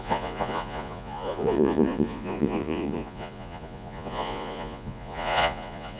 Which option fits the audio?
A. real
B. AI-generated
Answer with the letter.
B